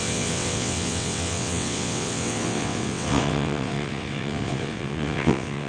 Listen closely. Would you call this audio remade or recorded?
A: remade